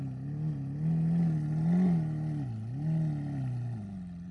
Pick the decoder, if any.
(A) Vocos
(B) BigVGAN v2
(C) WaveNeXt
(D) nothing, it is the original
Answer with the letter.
D